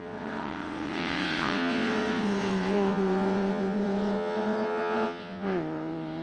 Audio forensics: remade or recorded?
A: remade